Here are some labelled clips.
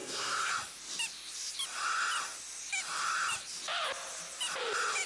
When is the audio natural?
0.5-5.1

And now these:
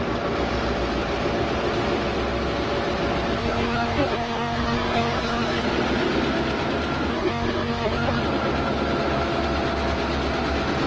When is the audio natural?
0.0-3.4; 5.6-7.1; 8.2-10.9

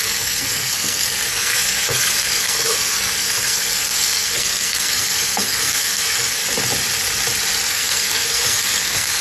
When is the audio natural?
6.4-7.7

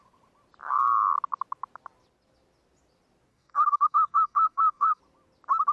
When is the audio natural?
0.0-3.3; 5.0-5.7

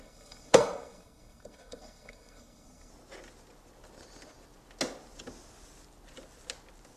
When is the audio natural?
2.9-7.0

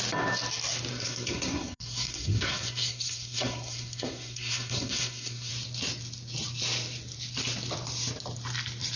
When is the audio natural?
0.0-0.9; 5.5-9.0

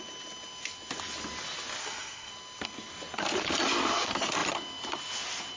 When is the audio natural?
0.0-1.8; 2.3-5.6